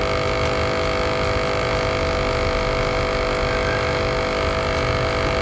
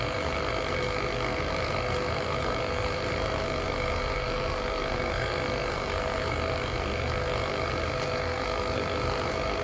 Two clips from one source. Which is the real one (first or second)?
first